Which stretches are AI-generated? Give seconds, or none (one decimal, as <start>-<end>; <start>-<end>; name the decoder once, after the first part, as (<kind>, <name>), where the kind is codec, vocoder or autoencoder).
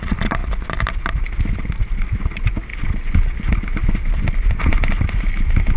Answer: none